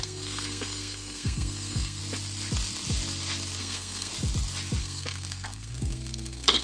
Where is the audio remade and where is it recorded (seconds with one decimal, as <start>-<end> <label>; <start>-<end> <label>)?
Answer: 0.0-2.0 remade; 2.0-3.6 recorded; 3.6-4.1 remade; 4.1-4.8 recorded; 4.8-6.6 remade